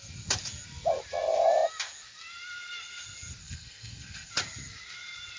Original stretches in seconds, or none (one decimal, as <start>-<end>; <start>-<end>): 0.0-3.4; 4.3-5.4